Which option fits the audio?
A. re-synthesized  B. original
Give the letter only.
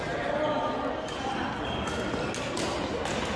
B